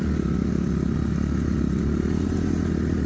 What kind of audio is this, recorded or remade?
recorded